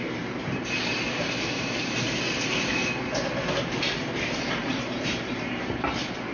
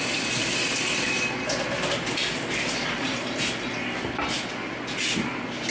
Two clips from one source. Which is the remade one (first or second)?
first